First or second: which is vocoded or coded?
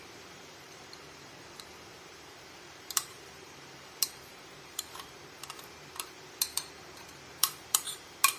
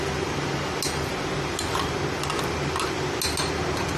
first